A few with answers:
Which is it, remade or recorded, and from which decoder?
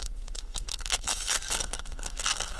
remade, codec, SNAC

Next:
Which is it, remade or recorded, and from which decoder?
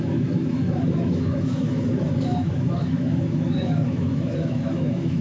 remade, autoencoder, DAC-VAE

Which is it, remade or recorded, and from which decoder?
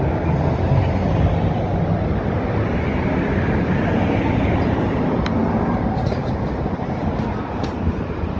recorded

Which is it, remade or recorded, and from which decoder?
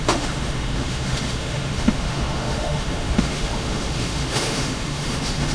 remade, autoencoder, DAC-VAE